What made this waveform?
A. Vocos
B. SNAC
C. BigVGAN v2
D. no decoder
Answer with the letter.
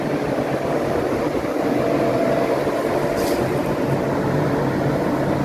D